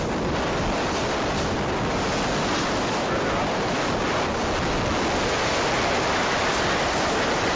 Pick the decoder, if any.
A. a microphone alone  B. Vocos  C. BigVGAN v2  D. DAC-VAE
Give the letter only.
A